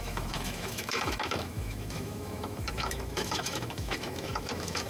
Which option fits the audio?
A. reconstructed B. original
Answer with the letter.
A